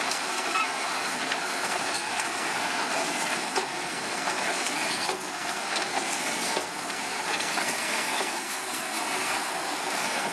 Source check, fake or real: fake